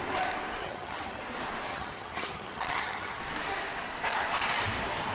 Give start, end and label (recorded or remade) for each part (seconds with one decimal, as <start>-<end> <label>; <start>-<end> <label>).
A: 0.0-0.6 recorded; 0.6-1.2 remade; 1.2-1.7 recorded; 1.7-3.2 remade; 3.2-5.1 recorded